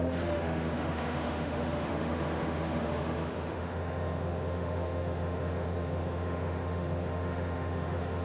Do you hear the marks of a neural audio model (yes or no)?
yes